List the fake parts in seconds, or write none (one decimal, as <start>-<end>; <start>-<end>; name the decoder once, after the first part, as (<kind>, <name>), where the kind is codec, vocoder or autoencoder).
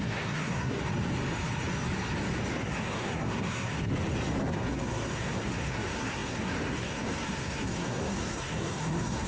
0.0-0.8 (codec, SNAC); 2.5-3.9; 4.5-9.3